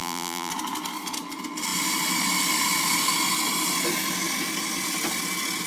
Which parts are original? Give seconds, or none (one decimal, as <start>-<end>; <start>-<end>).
0.5-5.7

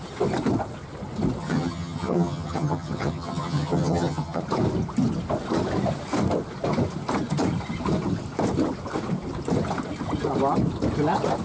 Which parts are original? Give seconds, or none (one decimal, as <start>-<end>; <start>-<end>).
0.0-1.4; 4.4-11.4

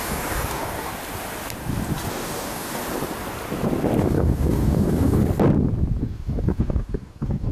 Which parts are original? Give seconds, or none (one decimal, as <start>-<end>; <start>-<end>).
0.9-2.1; 2.8-4.0; 5.2-6.0

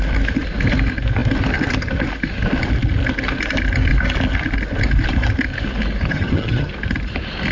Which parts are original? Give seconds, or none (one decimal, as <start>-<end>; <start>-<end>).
0.0-6.1; 6.7-7.5

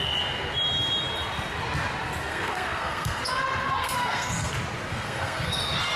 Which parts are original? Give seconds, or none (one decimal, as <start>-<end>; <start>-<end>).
0.0-2.3; 3.2-3.8; 4.5-4.9; 5.6-6.0

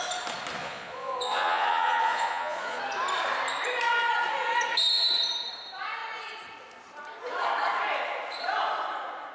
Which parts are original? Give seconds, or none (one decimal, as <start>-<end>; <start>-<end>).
0.0-0.6; 2.8-9.3